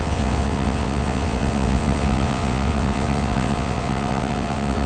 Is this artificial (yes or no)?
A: yes